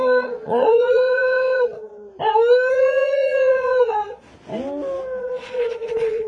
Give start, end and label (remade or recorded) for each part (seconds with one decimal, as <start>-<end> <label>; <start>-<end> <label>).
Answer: 0.0-1.9 remade; 1.9-2.7 recorded; 2.7-4.3 remade; 4.3-5.2 recorded; 5.2-6.3 remade